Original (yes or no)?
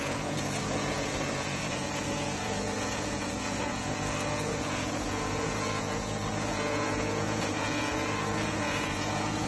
no